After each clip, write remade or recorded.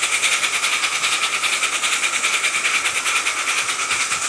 recorded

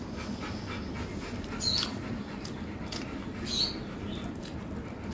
recorded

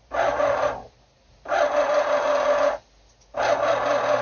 recorded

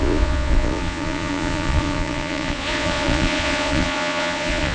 remade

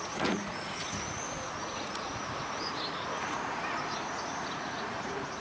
remade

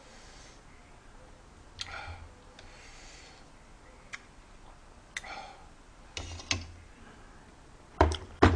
recorded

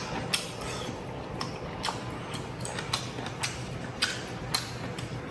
recorded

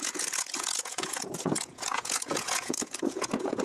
remade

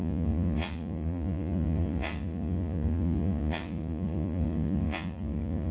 remade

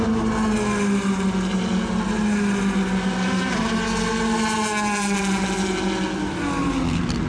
recorded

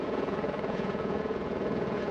remade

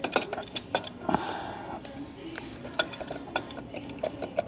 recorded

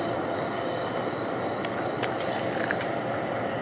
recorded